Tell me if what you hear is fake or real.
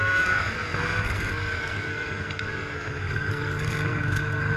fake